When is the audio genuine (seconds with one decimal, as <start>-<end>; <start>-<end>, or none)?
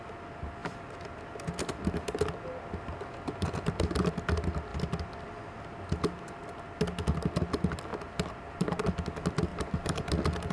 0.0-7.9; 8.8-9.5; 10.1-10.5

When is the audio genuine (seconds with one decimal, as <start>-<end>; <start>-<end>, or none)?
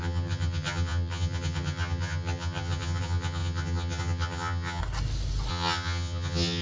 4.8-5.5